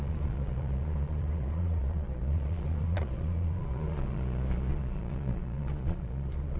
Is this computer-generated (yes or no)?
yes